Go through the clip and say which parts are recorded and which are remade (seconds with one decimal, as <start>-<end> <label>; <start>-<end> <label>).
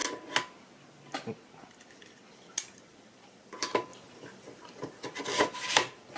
0.0-2.3 recorded; 2.3-6.2 remade